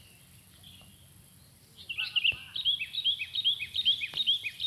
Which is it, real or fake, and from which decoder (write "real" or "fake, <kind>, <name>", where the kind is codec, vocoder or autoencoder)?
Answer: real